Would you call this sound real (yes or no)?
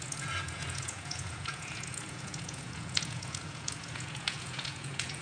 no